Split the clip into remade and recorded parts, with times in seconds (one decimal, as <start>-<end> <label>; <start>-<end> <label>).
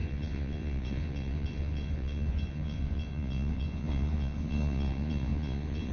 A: 0.0-5.9 remade